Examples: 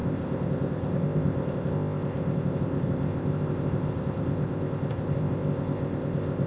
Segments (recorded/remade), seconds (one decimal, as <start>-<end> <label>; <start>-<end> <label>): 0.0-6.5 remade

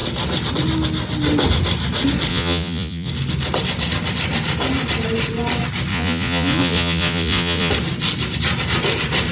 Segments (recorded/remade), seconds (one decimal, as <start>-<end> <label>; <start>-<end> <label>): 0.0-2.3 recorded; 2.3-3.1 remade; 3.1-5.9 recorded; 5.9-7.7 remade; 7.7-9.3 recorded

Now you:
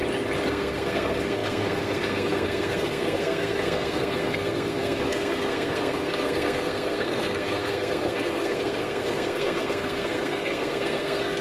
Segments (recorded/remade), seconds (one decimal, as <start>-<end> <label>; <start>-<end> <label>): 0.0-0.5 recorded; 0.5-11.4 remade

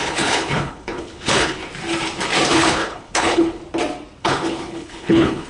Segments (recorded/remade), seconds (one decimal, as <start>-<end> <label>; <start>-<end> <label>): 0.0-1.6 remade; 1.6-2.5 recorded; 2.5-3.6 remade; 3.6-4.2 recorded; 4.2-5.5 remade

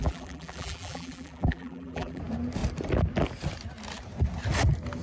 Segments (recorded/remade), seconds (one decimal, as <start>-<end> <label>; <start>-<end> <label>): 0.0-2.2 remade; 2.2-5.0 recorded

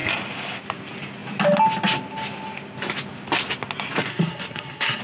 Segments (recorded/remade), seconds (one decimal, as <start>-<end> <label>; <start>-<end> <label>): 0.0-4.1 recorded; 4.1-5.0 remade